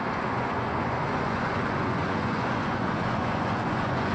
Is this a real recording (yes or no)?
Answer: no